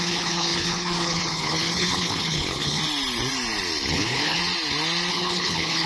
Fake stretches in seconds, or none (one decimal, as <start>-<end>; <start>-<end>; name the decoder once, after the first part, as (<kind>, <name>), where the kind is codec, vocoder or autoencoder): 0.0-2.8 (codec, HILCodec); 3.9-4.4; 5.1-5.9